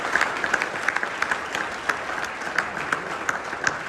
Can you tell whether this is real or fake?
real